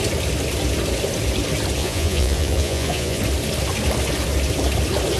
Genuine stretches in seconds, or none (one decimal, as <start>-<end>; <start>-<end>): 0.0-1.8; 3.2-5.2